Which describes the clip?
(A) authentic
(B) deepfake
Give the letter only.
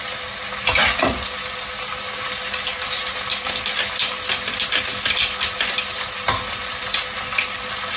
A